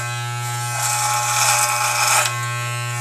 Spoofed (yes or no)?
no